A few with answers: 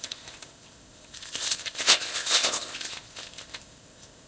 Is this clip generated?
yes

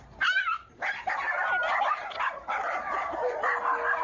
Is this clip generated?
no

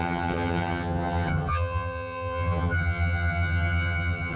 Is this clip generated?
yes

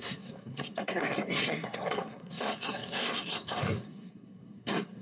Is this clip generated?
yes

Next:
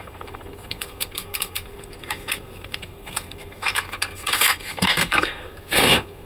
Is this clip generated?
yes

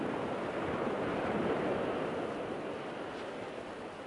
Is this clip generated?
no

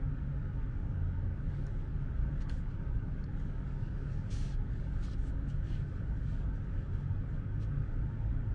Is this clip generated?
yes